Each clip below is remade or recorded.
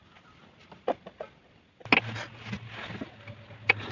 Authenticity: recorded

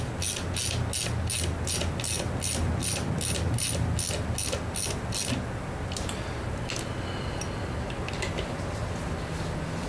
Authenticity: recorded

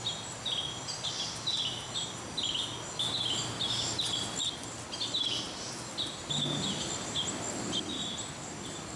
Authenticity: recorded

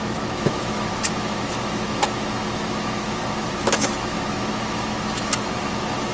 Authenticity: remade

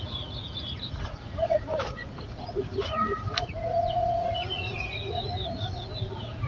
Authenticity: remade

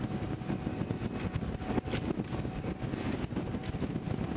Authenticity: recorded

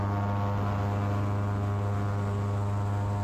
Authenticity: recorded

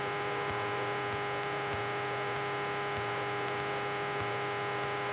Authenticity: recorded